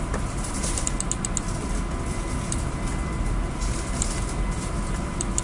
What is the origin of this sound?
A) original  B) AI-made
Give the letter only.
A